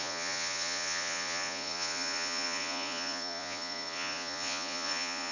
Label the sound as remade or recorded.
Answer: remade